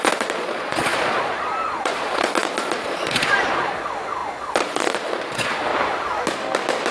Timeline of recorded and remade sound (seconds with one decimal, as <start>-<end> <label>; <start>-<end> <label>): 0.0-5.7 remade; 5.7-6.9 recorded